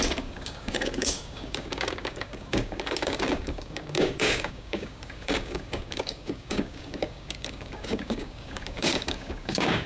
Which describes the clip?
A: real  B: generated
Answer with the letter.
B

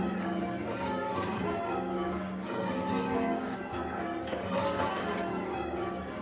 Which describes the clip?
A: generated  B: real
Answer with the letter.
A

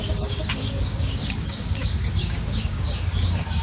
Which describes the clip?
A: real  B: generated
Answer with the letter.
B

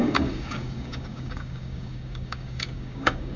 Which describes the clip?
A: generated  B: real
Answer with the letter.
A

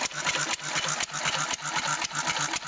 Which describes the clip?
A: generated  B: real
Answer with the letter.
B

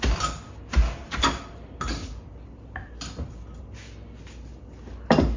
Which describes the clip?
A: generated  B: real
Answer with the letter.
B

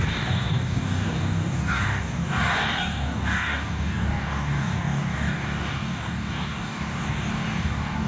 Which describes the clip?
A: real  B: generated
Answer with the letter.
B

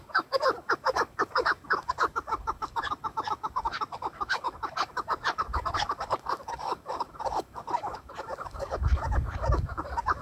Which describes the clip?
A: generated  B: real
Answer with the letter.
A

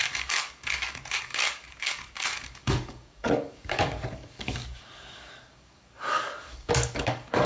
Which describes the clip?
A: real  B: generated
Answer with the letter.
B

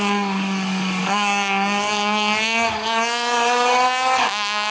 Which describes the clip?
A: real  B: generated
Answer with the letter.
B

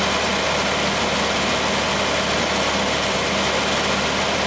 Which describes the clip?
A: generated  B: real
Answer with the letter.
B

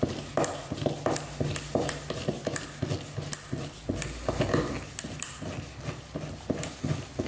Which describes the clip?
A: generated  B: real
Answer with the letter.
B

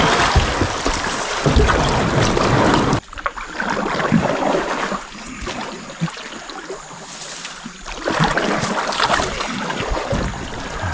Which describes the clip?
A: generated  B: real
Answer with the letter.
B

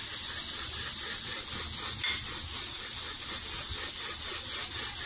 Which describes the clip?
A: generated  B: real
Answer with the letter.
B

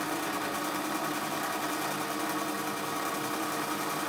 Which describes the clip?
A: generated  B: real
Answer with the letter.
B